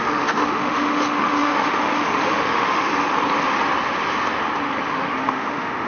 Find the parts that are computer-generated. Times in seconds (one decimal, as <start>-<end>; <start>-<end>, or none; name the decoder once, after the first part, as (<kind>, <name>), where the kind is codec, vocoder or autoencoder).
0.0-2.9 (autoencoder, DAC-VAE); 4.9-5.9